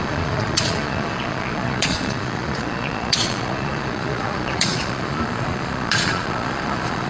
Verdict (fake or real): fake